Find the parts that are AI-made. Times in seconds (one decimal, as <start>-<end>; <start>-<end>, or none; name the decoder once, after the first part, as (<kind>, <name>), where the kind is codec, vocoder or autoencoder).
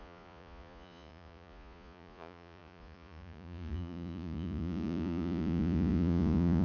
0.0-6.6 (vocoder, Vocos)